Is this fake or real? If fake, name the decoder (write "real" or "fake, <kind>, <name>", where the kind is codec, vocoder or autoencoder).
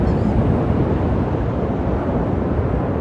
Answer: fake, vocoder, BigVGAN v2